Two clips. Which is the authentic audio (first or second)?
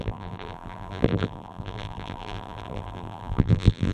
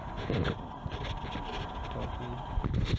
second